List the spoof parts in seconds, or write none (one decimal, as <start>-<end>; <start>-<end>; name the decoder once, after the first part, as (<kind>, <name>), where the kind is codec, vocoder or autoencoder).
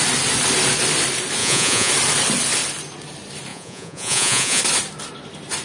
1.4-1.9 (vocoder, Vocos); 3.5-4.6